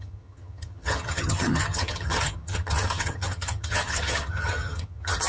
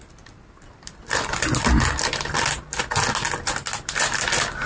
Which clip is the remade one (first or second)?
first